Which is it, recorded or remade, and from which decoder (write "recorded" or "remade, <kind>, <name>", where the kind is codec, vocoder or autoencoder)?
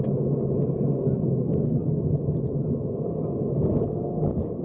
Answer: recorded